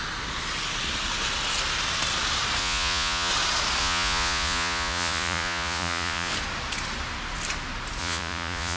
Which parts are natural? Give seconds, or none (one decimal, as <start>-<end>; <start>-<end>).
0.0-2.6; 3.3-3.8; 6.3-8.0